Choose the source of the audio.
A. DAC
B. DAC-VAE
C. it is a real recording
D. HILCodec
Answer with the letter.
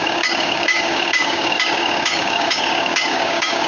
A